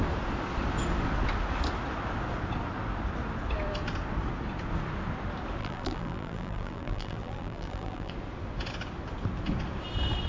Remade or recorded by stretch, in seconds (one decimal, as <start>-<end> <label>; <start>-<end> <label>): 0.0-5.6 recorded; 5.6-8.1 remade; 8.1-10.3 recorded